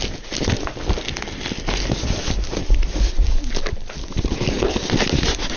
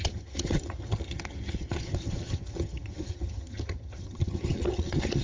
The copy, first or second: second